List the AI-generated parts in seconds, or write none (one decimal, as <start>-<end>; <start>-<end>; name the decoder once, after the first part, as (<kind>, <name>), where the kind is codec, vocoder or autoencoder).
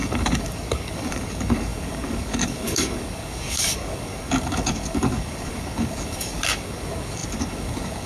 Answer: 0.0-8.1 (codec, DAC)